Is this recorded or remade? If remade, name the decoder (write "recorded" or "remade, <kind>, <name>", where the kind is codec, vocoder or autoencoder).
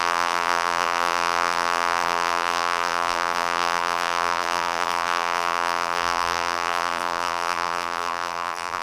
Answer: remade, vocoder, BigVGAN v2